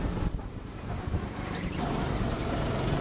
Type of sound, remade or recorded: remade